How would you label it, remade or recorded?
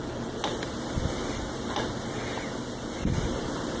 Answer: recorded